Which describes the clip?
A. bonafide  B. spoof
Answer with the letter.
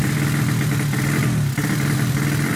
A